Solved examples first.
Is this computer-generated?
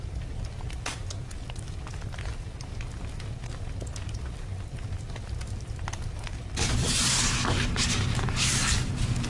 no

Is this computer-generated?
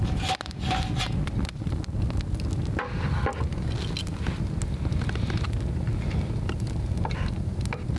no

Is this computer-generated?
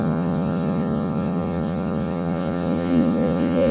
yes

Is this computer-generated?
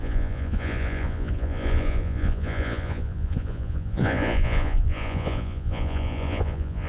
yes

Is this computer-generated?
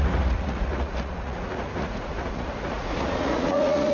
yes